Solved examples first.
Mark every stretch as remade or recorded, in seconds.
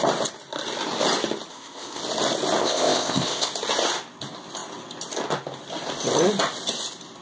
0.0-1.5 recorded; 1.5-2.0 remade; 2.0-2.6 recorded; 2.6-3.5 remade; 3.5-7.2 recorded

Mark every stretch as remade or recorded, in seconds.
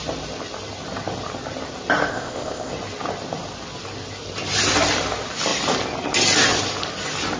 0.0-2.1 recorded; 2.1-2.7 remade; 2.7-7.4 recorded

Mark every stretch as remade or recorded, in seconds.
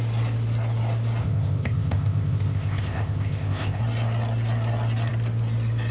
0.0-1.2 recorded; 1.2-3.8 remade; 3.8-5.9 recorded